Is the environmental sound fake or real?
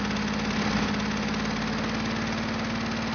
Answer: real